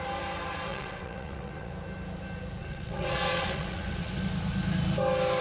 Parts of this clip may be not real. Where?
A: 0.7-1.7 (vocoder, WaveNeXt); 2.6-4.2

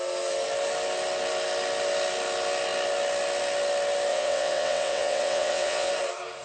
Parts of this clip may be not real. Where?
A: 4.1-5.9 (vocoder, WaveNeXt)

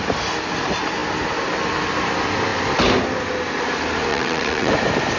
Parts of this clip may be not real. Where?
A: 4.1-4.7 (vocoder, WaveNeXt)

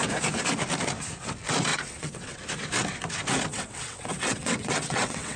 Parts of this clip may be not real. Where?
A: 1.7-2.4 (vocoder, WaveNeXt); 3.5-5.4

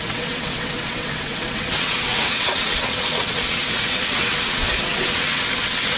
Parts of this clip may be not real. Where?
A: 0.0-6.0 (vocoder, WaveNeXt)

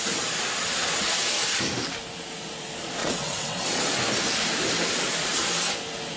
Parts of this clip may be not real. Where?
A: 3.0-3.9 (vocoder, WaveNeXt)

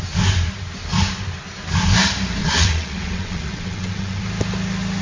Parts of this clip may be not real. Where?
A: 2.4-4.2 (vocoder, WaveNeXt)